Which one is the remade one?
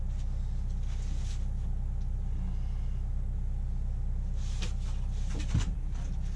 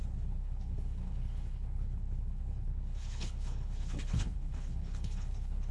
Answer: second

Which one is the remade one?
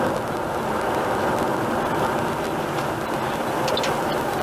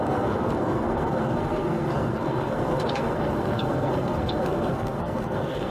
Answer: second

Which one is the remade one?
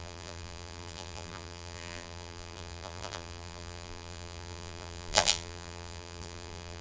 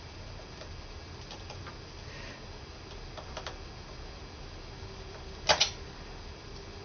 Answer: first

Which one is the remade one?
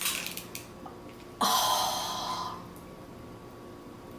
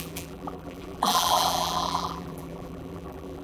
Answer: second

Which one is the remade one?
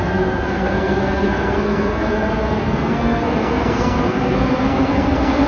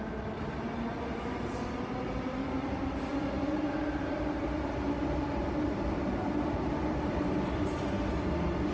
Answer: first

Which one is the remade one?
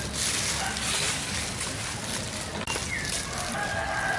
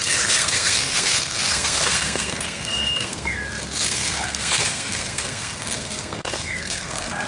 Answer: second